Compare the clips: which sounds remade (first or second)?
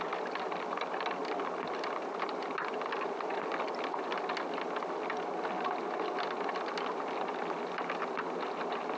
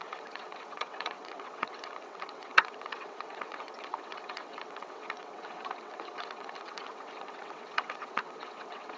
second